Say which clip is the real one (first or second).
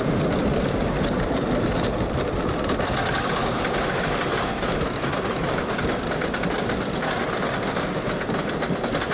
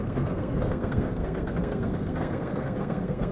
first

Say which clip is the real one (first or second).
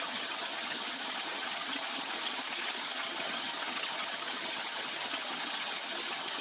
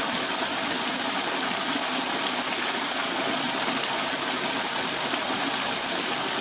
second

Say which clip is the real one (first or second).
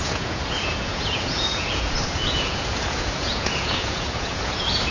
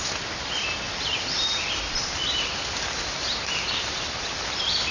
second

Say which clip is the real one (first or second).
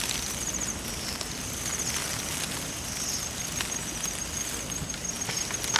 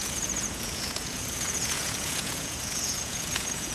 first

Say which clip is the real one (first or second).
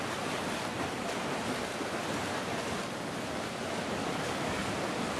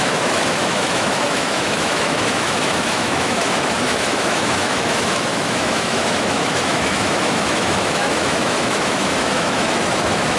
first